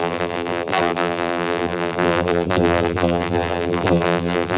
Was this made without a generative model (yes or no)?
no